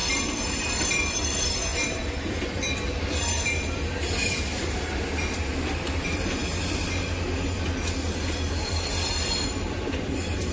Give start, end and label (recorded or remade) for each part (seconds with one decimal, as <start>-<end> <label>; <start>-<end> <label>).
0.0-6.4 remade; 6.4-8.5 recorded; 8.5-8.9 remade; 8.9-9.5 recorded; 9.5-10.5 remade